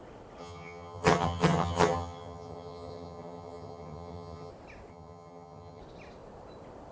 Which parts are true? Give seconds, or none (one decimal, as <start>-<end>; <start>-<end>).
0.0-0.4; 4.5-4.9; 5.8-6.9

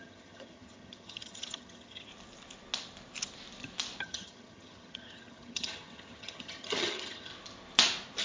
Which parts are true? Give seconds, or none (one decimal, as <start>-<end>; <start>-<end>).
2.1-4.0; 7.3-8.2

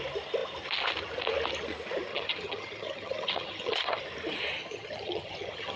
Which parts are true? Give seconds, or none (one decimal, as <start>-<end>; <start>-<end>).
0.0-2.1; 4.0-4.6

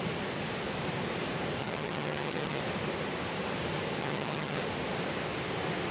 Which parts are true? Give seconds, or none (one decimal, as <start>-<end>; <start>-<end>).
0.0-1.6; 2.6-4.0; 4.6-5.9